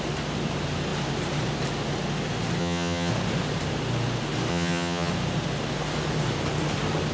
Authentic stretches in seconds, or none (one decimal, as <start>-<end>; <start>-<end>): 0.0-2.6; 3.1-4.5; 5.1-7.1